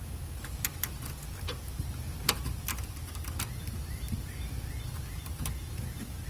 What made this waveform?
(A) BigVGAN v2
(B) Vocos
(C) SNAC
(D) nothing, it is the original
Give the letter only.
D